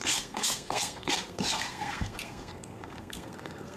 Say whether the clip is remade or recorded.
remade